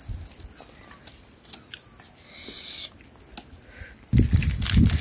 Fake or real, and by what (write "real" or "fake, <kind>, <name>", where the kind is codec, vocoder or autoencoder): real